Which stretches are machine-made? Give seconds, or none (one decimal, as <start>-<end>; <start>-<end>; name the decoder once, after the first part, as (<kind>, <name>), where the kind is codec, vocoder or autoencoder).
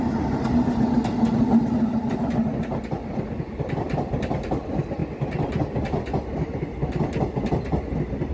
none